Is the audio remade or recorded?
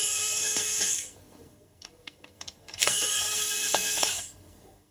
remade